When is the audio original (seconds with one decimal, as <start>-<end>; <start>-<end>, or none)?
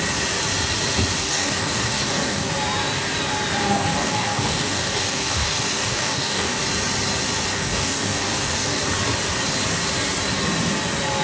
0.0-1.2; 2.5-3.6; 6.6-7.5; 8.8-11.2